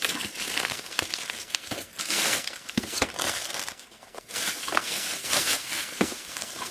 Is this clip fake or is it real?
fake